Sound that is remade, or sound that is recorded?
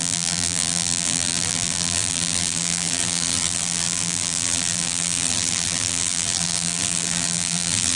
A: remade